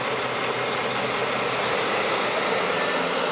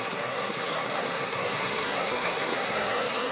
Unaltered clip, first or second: first